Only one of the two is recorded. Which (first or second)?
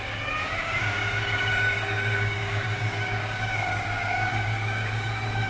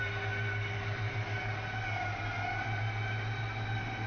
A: second